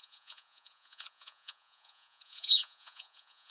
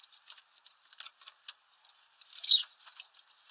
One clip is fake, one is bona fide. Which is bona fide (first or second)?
second